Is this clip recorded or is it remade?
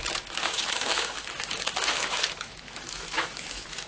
remade